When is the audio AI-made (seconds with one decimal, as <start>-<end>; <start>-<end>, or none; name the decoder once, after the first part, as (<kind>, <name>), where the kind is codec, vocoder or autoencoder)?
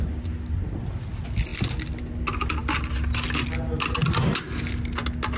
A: none